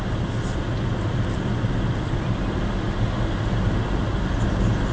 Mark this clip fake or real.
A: real